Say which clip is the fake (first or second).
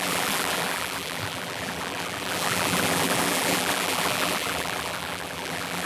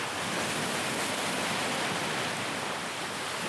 first